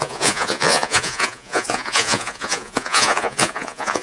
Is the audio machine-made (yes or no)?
yes